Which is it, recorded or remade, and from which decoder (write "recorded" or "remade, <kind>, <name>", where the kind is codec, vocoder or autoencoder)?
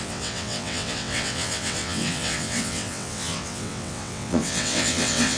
remade, vocoder, WaveNeXt